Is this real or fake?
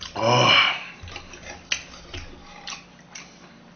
real